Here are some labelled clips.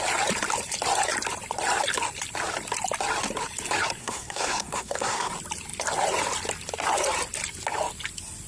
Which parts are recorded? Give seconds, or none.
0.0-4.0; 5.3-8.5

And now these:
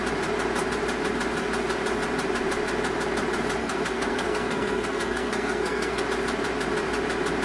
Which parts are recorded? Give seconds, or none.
0.0-3.6; 6.0-7.4

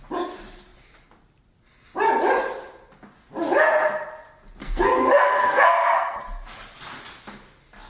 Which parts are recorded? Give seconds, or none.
0.0-4.6; 6.2-7.9

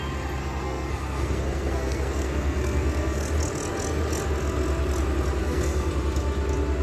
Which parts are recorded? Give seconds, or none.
0.0-0.4; 3.3-5.4; 5.9-6.8

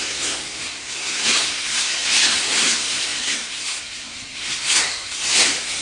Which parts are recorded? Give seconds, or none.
none